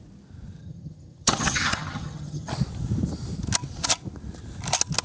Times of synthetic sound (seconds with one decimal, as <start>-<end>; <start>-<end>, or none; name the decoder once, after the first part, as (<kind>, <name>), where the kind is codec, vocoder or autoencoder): 0.6-2.5 (vocoder, HiFi-GAN)